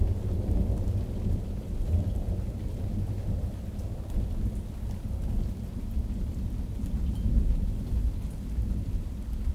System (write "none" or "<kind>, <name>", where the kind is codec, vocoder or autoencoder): none